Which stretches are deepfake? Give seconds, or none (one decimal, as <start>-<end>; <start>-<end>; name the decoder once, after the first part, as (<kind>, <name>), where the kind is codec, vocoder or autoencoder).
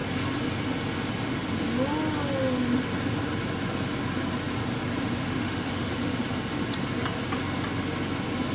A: 5.2-5.9 (autoencoder, DAC-VAE)